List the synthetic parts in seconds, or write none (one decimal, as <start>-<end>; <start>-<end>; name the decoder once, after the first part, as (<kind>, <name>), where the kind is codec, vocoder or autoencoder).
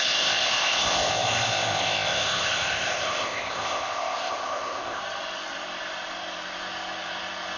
0.0-5.0 (codec, ZipCodec)